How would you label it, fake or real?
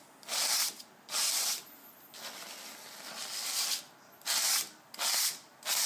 real